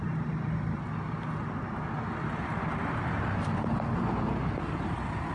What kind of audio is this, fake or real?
real